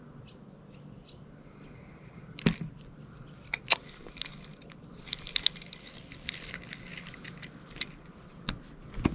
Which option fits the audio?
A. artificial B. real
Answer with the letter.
B